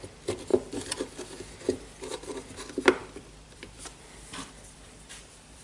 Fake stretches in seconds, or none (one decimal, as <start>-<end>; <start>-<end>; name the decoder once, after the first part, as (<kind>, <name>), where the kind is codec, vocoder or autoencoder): 3.0-5.6 (vocoder, BigVGAN v2)